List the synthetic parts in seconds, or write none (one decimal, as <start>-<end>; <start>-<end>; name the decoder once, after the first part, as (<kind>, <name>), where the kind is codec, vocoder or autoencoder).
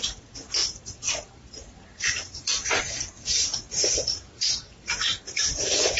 0.6-2.8 (vocoder, BigVGAN v2); 3.4-6.0